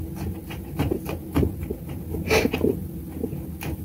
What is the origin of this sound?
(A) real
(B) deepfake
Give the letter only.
A